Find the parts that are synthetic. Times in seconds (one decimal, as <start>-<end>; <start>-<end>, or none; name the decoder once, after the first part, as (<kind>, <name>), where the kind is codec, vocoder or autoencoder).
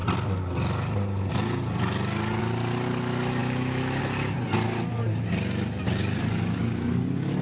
3.4-4.0 (autoencoder, DAC-VAE)